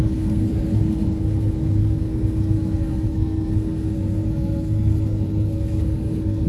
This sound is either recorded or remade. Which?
remade